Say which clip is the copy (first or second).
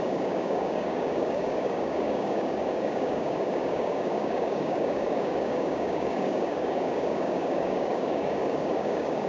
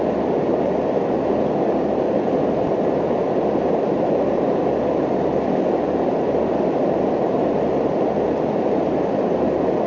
first